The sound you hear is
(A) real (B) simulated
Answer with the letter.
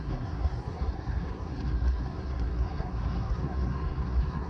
B